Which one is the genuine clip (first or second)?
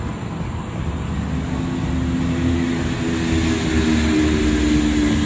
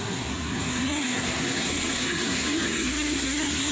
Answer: first